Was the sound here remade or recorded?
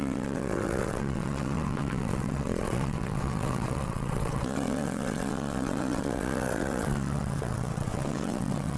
remade